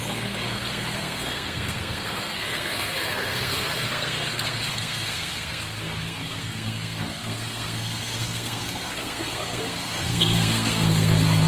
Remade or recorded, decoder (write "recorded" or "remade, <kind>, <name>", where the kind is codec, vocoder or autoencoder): remade, codec, SNAC